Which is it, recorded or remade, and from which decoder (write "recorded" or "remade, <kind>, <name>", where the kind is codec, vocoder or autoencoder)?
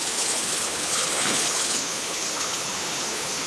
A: remade, codec, HILCodec